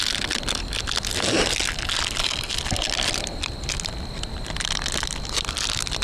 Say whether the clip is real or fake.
real